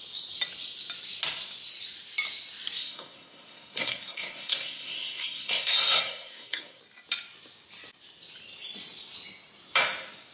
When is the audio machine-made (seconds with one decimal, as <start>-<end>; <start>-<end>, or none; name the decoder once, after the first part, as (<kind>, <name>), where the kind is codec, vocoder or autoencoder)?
2.8-6.8 (codec, SNAC)